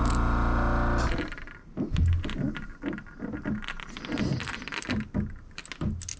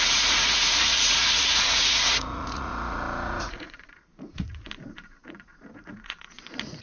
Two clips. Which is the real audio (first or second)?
first